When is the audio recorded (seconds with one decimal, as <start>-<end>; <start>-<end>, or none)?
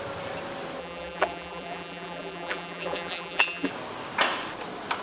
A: 0.0-0.8; 3.7-5.0